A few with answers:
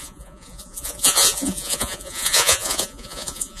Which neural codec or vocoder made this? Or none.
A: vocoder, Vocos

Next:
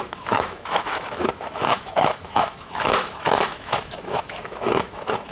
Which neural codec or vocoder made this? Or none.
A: autoencoder, DAC-VAE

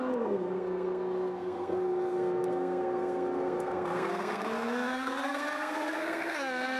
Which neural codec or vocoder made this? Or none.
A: codec, SNAC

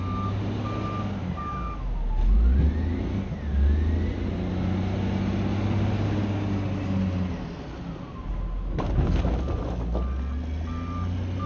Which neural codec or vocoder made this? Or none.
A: none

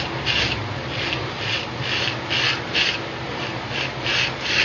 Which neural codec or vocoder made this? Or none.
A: none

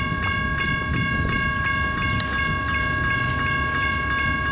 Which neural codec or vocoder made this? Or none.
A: none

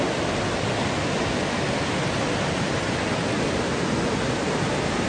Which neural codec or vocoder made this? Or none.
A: none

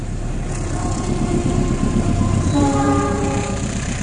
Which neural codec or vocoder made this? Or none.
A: vocoder, BigVGAN v2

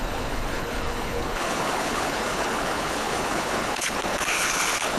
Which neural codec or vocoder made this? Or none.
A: codec, HILCodec